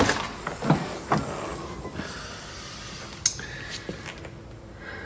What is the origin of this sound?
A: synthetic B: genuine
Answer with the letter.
B